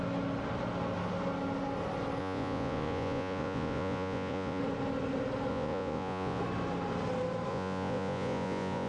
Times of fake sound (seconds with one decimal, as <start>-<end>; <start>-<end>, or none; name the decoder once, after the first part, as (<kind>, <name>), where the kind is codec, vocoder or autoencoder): 2.2-4.6 (vocoder, Vocos); 5.5-6.4; 7.5-8.9